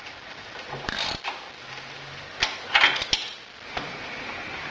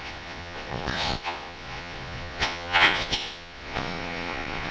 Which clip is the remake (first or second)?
second